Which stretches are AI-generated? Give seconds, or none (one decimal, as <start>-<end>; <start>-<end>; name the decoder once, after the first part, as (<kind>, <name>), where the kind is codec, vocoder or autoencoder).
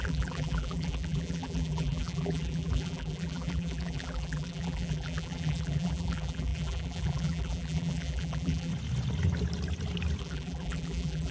0.0-8.7 (vocoder, BigVGAN v2); 10.2-11.3